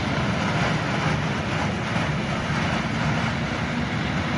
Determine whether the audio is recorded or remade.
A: recorded